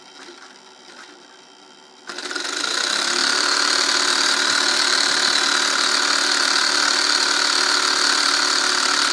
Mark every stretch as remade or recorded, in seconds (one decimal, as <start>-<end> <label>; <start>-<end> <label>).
0.0-3.2 recorded; 3.2-5.1 remade; 5.1-9.1 recorded